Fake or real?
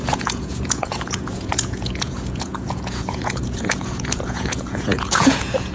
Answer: fake